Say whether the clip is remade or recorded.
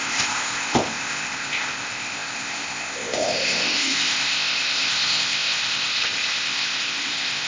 remade